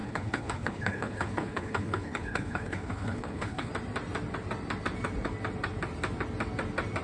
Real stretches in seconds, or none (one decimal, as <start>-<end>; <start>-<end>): 3.7-7.0